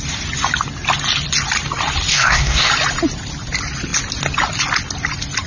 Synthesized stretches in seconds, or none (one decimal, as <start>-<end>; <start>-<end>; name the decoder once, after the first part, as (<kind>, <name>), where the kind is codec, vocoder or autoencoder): 2.1-2.7 (codec, SNAC)